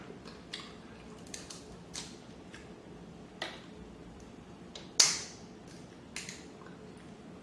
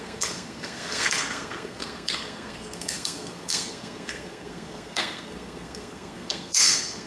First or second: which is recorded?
first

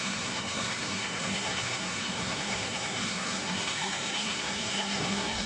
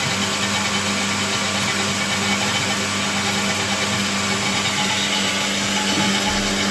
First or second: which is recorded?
second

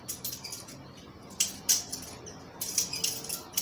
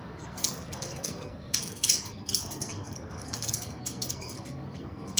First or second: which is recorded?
first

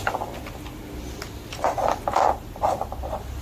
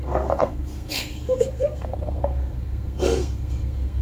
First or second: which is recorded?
first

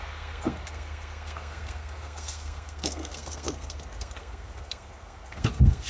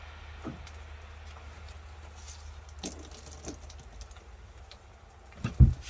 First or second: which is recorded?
second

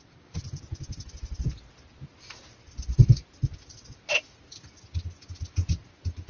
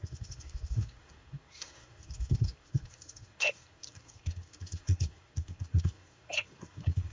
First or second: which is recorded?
first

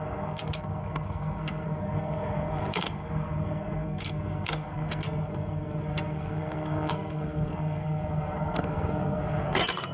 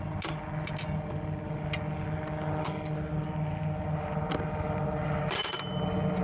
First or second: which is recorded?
second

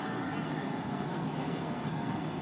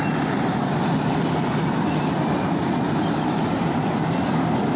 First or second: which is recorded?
second